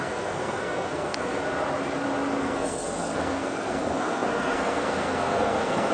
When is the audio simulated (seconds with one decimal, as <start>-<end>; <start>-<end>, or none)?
0.0-1.4; 2.4-5.9